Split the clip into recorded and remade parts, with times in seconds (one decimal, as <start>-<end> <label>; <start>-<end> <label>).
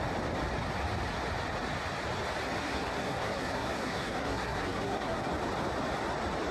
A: 0.0-2.6 recorded; 2.6-5.3 remade; 5.3-6.5 recorded